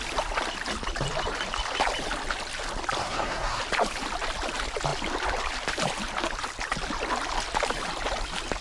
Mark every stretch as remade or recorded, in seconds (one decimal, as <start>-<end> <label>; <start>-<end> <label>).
0.0-3.0 recorded; 3.0-3.6 remade; 3.6-8.6 recorded